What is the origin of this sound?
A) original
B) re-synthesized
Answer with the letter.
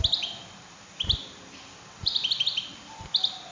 A